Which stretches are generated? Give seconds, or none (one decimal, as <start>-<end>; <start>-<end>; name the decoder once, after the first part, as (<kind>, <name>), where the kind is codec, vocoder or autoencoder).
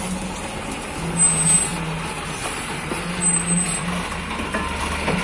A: none